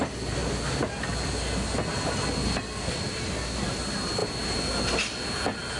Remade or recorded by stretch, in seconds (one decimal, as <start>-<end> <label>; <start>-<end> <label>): 0.0-5.8 recorded